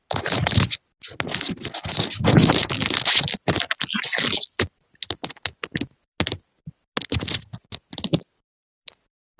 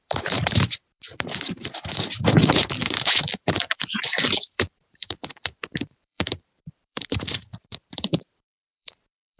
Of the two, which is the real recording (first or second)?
first